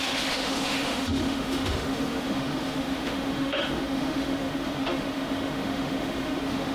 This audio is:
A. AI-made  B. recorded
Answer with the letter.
A